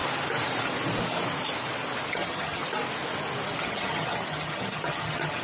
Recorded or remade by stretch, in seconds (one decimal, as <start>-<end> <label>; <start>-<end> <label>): 0.0-2.1 recorded; 2.1-2.6 remade; 2.6-3.6 recorded; 3.6-5.4 remade